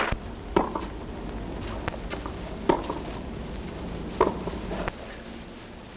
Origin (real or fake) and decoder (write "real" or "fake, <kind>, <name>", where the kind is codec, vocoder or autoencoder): real